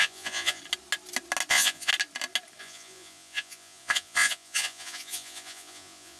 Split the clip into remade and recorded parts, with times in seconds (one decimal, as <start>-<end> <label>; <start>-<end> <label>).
0.0-0.6 remade; 0.6-1.5 recorded; 1.5-1.9 remade; 1.9-2.6 recorded; 2.6-6.2 remade